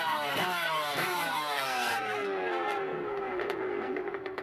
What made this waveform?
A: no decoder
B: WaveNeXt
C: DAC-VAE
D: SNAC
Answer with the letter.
D